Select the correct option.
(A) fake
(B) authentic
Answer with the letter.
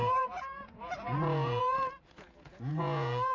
A